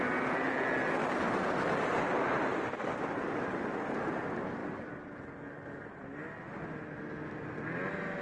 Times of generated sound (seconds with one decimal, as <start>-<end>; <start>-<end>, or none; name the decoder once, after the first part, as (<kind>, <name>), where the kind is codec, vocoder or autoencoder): 2.5-3.5 (vocoder, BigVGAN v2); 4.6-5.8